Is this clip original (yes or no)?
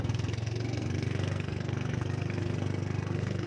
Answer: no